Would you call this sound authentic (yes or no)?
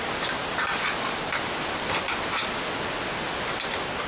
yes